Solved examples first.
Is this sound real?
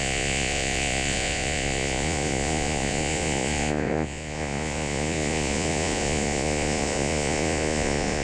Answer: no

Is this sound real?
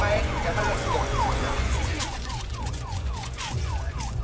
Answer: no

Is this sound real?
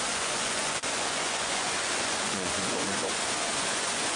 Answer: no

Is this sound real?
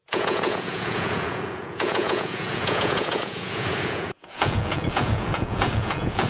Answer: no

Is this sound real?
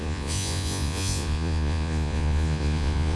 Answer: no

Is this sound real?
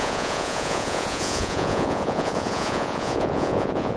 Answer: no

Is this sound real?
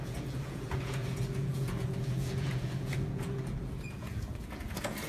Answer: no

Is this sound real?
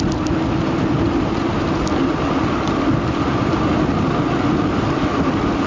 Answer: yes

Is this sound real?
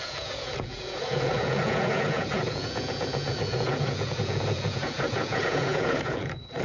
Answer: no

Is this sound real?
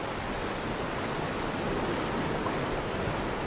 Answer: yes